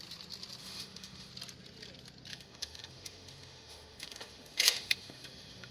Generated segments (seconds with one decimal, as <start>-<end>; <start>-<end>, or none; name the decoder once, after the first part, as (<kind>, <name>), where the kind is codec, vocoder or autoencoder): 0.6-1.3 (autoencoder, DAC-VAE); 2.3-5.7